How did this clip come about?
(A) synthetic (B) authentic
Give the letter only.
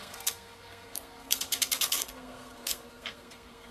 A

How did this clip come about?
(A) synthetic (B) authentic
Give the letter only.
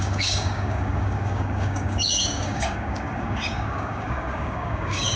A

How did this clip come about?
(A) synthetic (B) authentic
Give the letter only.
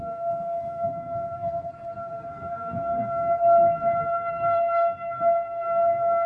A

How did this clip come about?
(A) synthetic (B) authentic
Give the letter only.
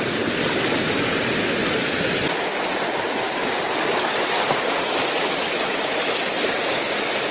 B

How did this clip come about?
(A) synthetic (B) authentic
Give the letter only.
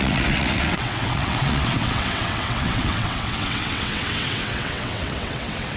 A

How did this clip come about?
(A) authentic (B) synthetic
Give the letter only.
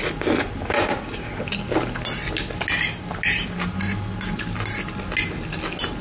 A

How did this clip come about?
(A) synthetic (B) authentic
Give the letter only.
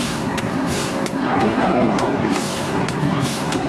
A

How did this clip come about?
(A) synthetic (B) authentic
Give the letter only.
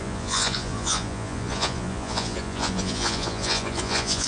A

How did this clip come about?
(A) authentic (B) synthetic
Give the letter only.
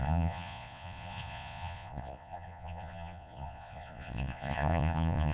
B